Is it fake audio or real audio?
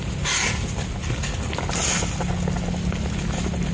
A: real